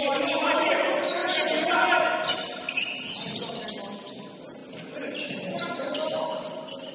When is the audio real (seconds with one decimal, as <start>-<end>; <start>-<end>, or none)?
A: 0.0-6.9